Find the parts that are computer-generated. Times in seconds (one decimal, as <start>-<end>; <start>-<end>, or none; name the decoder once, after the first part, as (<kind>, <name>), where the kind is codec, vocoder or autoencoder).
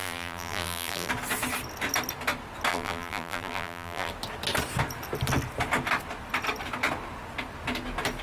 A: 0.0-1.1 (vocoder, BigVGAN v2); 2.7-4.1